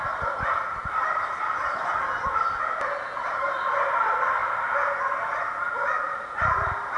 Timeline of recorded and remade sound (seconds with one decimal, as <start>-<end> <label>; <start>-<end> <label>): 0.0-7.0 recorded

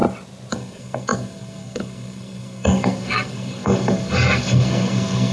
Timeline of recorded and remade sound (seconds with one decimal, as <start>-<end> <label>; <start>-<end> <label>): 0.0-0.5 recorded; 0.5-5.3 remade

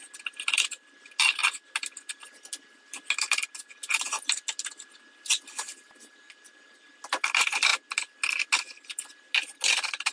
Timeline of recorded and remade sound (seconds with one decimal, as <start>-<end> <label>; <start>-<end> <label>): 0.0-10.1 recorded

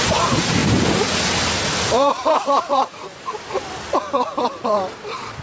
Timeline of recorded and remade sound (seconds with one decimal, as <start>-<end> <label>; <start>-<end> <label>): 0.0-5.4 recorded

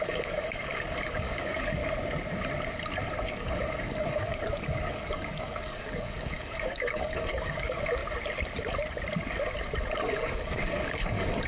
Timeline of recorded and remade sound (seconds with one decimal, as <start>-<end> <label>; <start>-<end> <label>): 0.0-1.8 remade; 1.8-3.2 recorded; 3.2-8.0 remade; 8.0-10.1 recorded; 10.1-11.5 remade

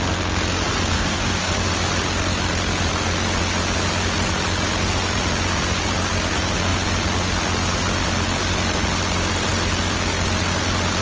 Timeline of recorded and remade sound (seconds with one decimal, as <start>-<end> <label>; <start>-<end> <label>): 0.0-0.9 recorded; 0.9-1.5 remade; 1.5-11.0 recorded

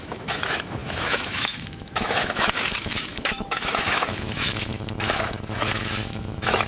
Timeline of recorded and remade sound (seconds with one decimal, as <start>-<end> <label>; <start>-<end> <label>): 0.0-6.7 remade

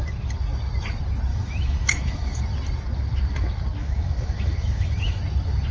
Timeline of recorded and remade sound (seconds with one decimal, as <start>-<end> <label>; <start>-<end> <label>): 0.0-1.3 recorded; 1.3-2.4 remade; 2.4-3.8 recorded; 3.8-5.2 remade; 5.2-5.7 recorded